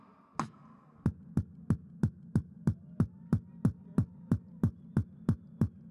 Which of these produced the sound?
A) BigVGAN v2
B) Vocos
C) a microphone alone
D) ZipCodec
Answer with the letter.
C